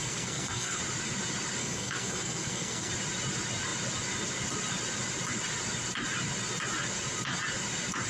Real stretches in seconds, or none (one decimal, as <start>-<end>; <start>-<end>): 0.8-1.6; 2.9-8.1